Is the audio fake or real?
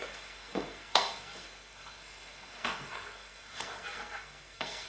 fake